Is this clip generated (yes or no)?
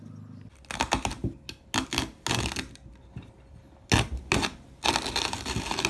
no